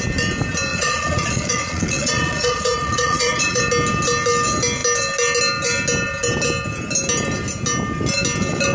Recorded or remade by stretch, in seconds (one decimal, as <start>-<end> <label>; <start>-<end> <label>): 0.0-0.7 recorded; 0.7-3.6 remade; 3.6-8.7 recorded